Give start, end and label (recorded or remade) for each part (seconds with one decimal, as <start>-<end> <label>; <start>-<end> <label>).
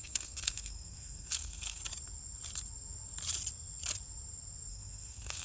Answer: 0.0-1.8 remade; 1.8-4.7 recorded; 4.7-5.4 remade